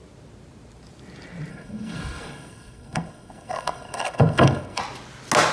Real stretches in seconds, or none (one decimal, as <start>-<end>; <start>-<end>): 0.0-1.5; 4.8-5.5